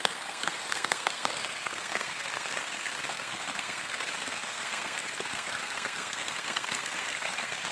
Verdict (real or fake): fake